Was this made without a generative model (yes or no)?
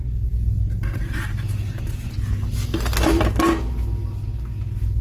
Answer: yes